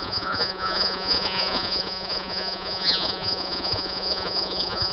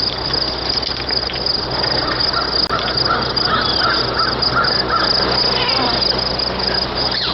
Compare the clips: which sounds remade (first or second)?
first